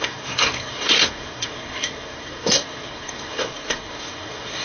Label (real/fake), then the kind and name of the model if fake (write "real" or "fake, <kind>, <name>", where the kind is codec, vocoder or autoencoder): fake, codec, SNAC